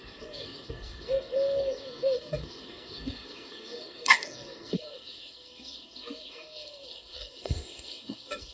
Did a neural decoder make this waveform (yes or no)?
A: yes